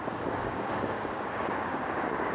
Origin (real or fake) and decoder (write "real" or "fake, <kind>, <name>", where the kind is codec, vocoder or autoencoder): fake, codec, DAC